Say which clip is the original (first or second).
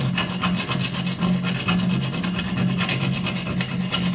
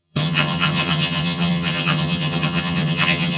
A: first